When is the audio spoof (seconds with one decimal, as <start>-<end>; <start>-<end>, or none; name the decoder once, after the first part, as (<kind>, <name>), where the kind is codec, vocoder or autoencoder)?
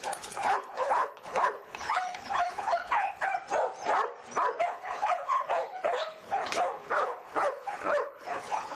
0.0-3.3 (codec, HILCodec); 4.6-8.7